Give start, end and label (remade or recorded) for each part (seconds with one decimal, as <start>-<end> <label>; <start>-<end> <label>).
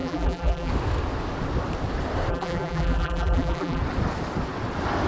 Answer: 0.0-0.7 remade; 0.7-2.3 recorded; 2.3-3.8 remade; 3.8-5.1 recorded